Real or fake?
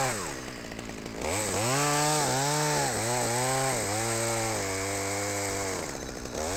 real